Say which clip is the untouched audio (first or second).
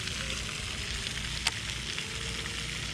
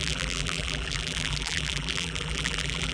first